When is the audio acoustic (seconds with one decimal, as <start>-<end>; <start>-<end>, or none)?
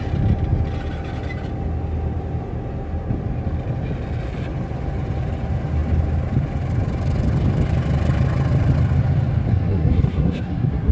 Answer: 0.0-9.5